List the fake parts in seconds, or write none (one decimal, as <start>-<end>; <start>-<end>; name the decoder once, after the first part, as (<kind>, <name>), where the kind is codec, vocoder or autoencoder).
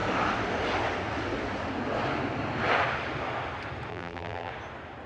3.9-4.5 (vocoder, BigVGAN v2)